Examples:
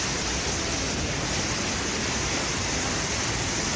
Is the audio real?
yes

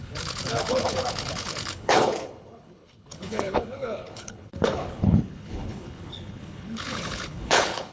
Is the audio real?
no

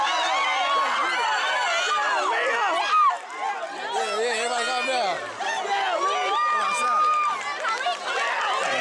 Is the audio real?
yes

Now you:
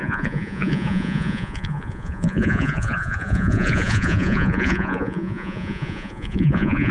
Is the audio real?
no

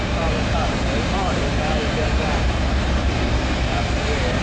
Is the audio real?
no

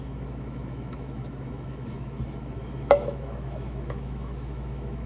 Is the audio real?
no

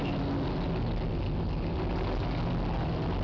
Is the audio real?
yes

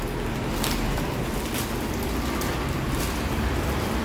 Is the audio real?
no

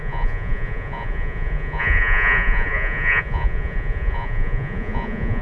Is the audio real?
no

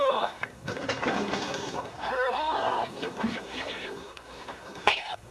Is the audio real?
no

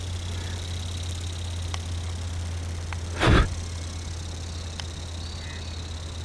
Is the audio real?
yes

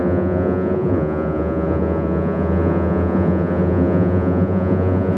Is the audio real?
no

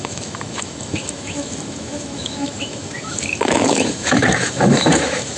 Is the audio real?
no